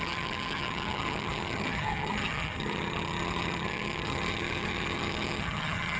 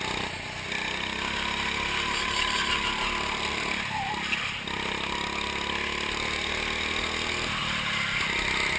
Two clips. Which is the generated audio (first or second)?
first